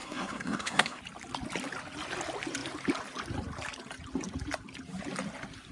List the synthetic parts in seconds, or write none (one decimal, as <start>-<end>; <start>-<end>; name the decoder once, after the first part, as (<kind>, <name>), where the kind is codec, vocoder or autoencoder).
0.0-1.0 (codec, SNAC)